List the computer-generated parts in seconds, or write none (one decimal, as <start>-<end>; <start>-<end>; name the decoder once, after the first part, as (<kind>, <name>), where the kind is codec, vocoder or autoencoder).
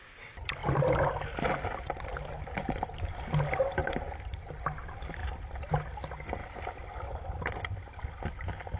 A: none